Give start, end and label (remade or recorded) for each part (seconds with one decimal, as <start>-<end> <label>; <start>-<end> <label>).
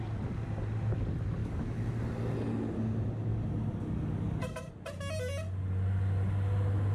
0.0-1.4 recorded; 1.4-1.9 remade; 1.9-3.3 recorded; 3.3-4.7 remade; 4.7-6.9 recorded